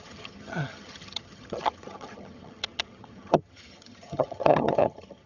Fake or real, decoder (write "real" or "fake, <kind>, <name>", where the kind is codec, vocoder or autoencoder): fake, vocoder, HiFi-GAN